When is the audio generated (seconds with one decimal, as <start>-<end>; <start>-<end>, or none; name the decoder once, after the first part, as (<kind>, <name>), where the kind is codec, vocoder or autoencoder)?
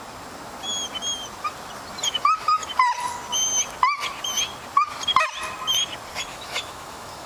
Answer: 6.3-7.3 (autoencoder, DAC-VAE)